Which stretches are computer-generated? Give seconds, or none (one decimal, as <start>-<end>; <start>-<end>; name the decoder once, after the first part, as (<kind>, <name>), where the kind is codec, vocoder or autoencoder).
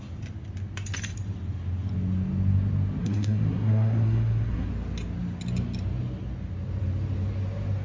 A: 3.0-4.7 (codec, SNAC)